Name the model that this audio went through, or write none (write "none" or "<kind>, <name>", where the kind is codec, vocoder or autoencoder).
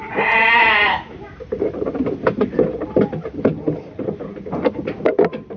none